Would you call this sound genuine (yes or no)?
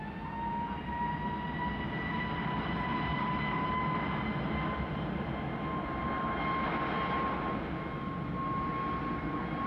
yes